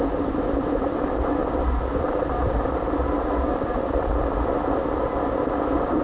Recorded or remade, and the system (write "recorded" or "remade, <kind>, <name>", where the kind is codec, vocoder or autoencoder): recorded